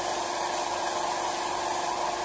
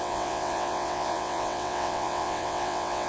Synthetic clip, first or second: second